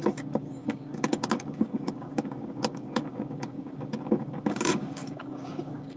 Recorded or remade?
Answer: remade